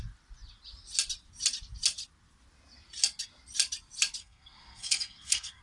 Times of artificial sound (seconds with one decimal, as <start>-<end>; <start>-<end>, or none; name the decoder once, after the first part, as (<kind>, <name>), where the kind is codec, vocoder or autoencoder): 4.2-5.6 (codec, SNAC)